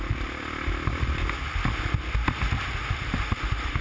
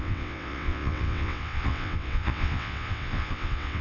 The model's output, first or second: second